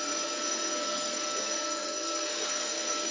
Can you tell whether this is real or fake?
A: fake